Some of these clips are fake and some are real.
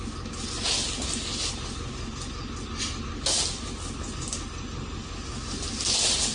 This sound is real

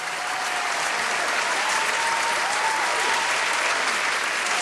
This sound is real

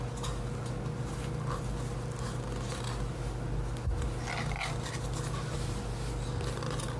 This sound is real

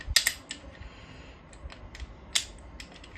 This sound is real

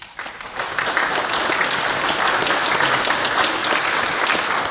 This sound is real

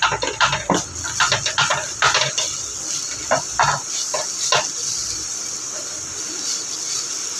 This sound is real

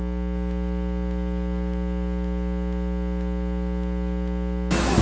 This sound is real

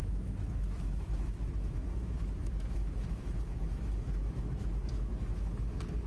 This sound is fake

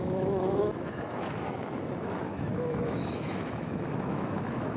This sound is fake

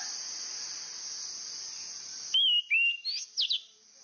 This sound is real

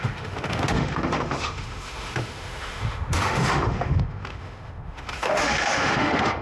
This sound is fake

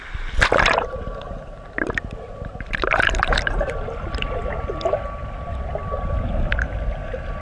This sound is real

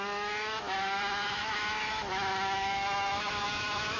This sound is fake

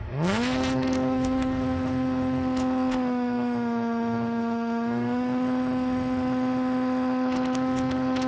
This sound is fake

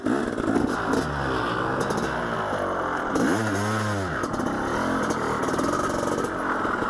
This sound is real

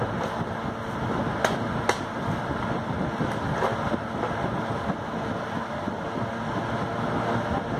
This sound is real